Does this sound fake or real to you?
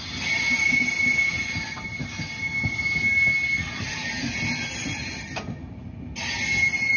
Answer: real